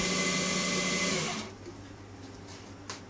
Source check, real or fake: real